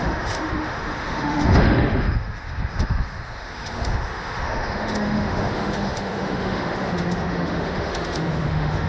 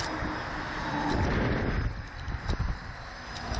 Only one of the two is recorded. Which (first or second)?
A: second